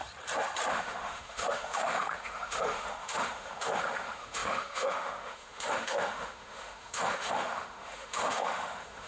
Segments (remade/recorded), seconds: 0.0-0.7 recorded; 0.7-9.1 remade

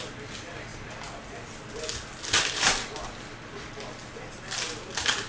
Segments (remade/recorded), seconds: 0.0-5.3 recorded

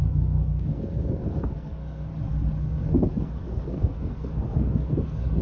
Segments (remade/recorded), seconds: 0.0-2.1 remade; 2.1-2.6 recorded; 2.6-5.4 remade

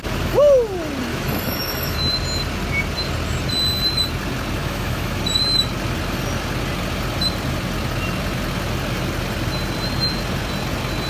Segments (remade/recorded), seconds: 0.0-1.1 recorded; 1.1-2.0 remade; 2.0-4.6 recorded; 4.6-5.2 remade; 5.2-11.1 recorded

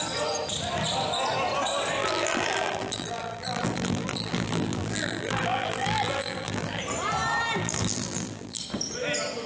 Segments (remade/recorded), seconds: 0.0-2.0 recorded; 2.0-6.8 remade; 6.8-7.6 recorded; 7.6-8.6 remade; 8.6-9.5 recorded